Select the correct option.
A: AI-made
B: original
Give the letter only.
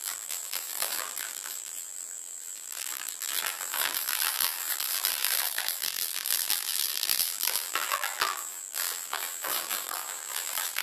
A